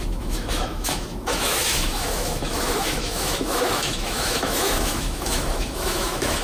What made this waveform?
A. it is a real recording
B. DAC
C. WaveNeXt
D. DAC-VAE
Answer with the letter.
D